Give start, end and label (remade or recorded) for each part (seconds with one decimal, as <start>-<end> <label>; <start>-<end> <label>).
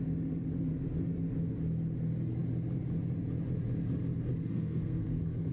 0.0-4.3 recorded; 4.3-5.5 remade